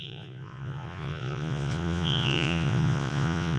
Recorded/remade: remade